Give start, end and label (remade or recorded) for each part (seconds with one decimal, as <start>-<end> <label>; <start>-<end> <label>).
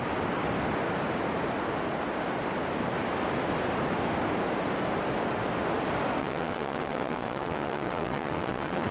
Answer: 0.0-6.2 recorded; 6.2-8.9 remade